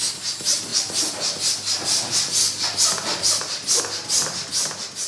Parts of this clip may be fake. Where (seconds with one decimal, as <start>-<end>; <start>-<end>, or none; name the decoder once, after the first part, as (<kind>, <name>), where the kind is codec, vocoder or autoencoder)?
none